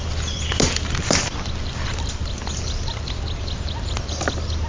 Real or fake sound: real